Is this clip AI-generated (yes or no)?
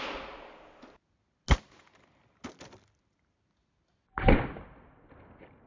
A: no